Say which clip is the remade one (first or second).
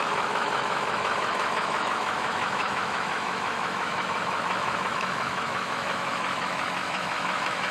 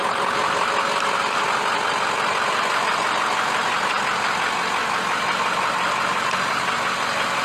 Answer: first